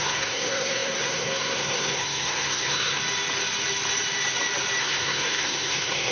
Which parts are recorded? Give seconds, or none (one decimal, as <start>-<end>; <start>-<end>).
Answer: 3.0-4.8